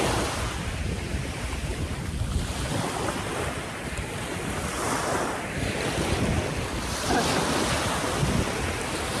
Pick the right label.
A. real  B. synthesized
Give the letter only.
A